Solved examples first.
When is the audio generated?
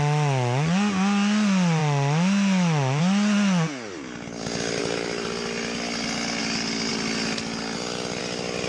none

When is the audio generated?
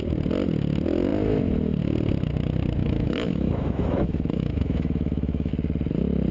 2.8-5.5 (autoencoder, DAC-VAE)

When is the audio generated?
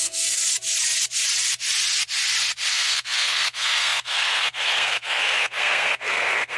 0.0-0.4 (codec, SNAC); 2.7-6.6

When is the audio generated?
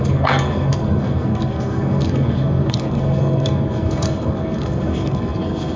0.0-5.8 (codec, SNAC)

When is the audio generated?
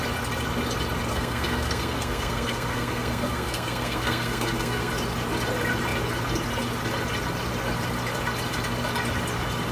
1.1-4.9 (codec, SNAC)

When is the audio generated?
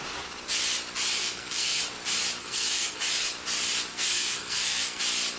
1.2-1.8 (codec, SNAC); 2.4-3.0; 3.9-5.0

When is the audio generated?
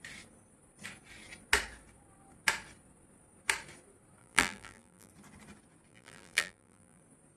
4.2-5.1 (vocoder, BigVGAN v2); 5.9-7.0